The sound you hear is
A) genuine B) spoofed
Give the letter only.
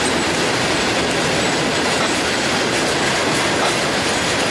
A